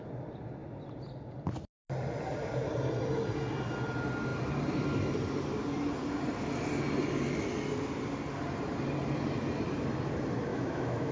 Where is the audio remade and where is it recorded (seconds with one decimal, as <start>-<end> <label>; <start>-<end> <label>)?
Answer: 0.0-10.5 recorded; 10.5-11.1 remade